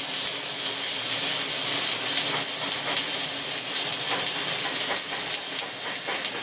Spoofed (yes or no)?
no